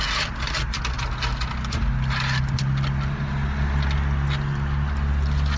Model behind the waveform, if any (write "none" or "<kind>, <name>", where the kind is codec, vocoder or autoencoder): none